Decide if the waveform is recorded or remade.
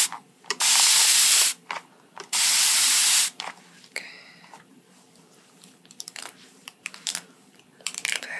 remade